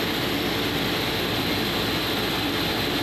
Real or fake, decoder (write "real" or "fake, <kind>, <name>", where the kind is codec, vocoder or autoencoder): real